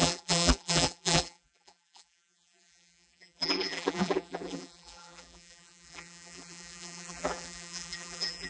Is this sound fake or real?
fake